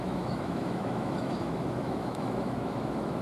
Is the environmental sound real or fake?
fake